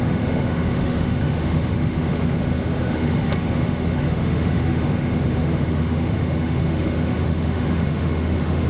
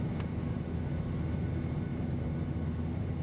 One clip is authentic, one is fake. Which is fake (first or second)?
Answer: first